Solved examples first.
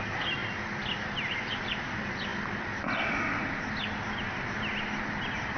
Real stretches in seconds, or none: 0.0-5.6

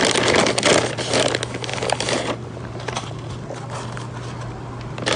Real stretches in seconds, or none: 0.0-1.7; 3.3-5.2

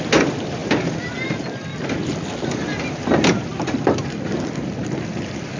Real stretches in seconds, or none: 0.0-5.6

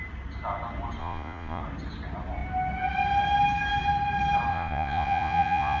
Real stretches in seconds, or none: 0.0-1.0; 1.6-4.5

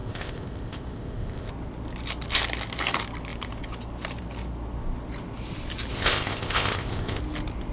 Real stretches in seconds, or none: 1.5-5.9; 7.2-7.7

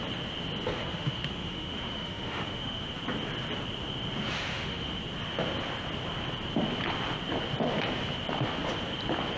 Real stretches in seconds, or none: 0.0-0.8; 2.9-4.5; 5.0-9.4